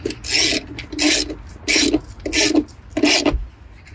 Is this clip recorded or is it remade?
recorded